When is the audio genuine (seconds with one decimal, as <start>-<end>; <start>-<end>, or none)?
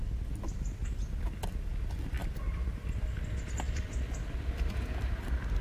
0.0-2.2; 3.0-5.6